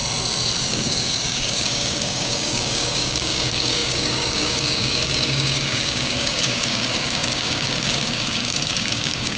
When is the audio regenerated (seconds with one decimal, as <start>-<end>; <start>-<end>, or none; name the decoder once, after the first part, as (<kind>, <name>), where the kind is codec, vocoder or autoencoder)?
0.6-9.4 (codec, DAC)